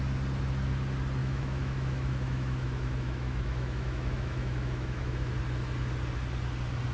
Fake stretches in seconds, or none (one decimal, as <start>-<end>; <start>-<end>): 1.2-5.3